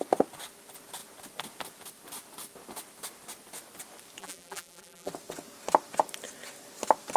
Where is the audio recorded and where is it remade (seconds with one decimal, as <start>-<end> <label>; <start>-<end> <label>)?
0.0-4.2 recorded; 4.2-5.1 remade; 5.1-7.2 recorded